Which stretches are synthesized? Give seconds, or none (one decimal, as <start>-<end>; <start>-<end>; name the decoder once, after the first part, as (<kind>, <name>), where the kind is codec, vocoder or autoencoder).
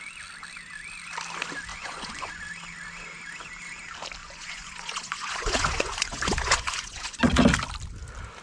1.7-2.4 (vocoder, Vocos); 4.2-7.2